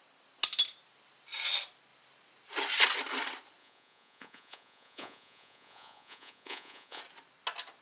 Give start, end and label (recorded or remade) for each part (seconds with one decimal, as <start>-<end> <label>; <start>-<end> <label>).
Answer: 0.0-3.6 recorded; 3.6-7.0 remade; 7.0-7.8 recorded